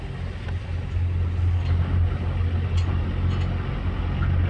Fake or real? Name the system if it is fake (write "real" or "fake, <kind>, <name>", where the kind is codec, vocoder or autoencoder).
real